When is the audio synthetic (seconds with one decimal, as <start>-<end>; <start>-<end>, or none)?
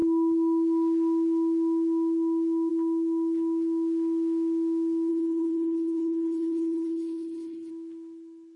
5.1-7.7